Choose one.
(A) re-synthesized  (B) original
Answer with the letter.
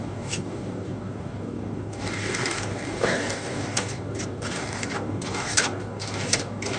A